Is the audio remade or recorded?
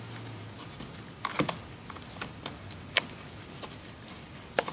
recorded